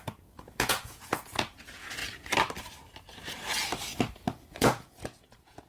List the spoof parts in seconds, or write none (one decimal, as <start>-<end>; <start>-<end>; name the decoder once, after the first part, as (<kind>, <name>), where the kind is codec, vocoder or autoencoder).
0.0-2.0 (vocoder, Vocos); 4.5-5.7